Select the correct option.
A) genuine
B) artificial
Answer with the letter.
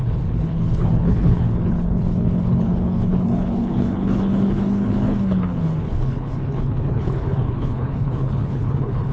B